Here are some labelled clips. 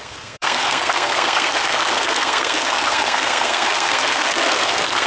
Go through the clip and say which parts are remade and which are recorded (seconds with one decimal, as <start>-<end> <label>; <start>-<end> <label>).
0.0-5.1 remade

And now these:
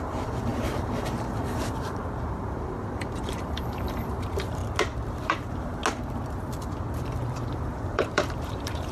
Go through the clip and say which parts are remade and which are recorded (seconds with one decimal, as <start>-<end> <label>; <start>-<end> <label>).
0.0-4.6 remade; 4.6-5.1 recorded; 5.1-5.8 remade; 5.8-7.0 recorded; 7.0-8.9 remade

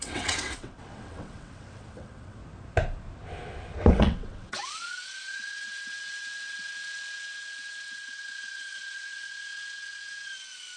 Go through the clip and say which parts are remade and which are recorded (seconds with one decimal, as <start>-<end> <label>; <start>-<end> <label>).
0.0-2.4 remade; 2.4-3.9 recorded; 3.9-10.8 remade